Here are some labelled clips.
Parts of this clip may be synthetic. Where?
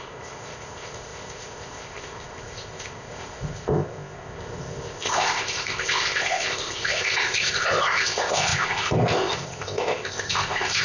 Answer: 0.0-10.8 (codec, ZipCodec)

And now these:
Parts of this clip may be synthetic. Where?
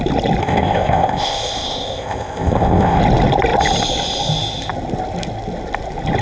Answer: 0.4-3.0 (codec, ZipCodec)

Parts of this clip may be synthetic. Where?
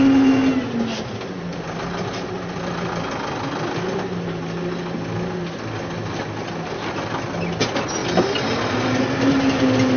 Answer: none